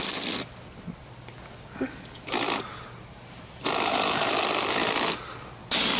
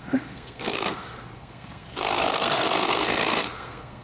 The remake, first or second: second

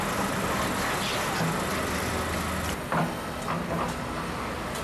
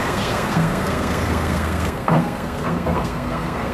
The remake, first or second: second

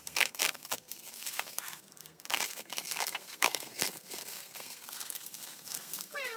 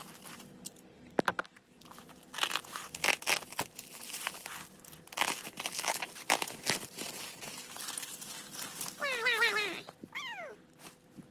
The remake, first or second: first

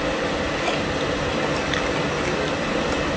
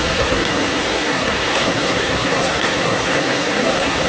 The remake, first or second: second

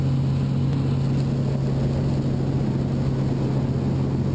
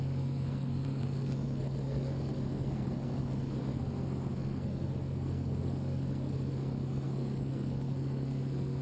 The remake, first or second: second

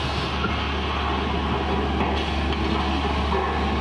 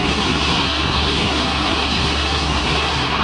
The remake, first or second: second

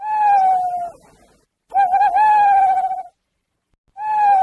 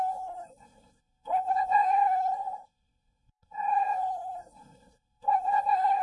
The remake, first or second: second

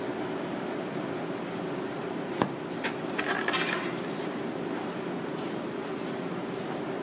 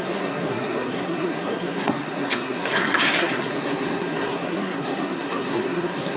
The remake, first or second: second